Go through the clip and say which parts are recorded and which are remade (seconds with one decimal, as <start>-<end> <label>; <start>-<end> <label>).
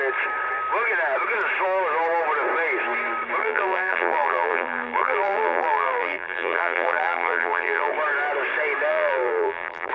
0.0-3.4 recorded; 3.4-7.9 remade; 7.9-8.9 recorded; 8.9-9.9 remade